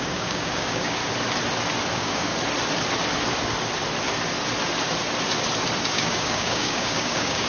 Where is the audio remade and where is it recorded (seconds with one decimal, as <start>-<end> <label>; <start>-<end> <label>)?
0.0-1.0 remade; 1.0-1.9 recorded; 1.9-2.3 remade; 2.3-5.8 recorded; 5.8-7.5 remade